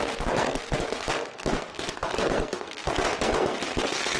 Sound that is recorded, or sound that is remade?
remade